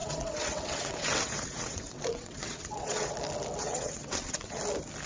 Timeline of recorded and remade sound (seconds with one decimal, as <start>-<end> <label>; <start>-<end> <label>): 0.0-3.1 remade; 3.1-3.6 recorded; 3.6-4.6 remade; 4.6-5.1 recorded